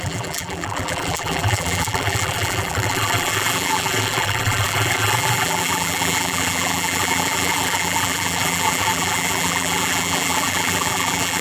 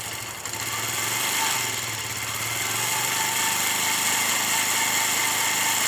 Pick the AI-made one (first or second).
first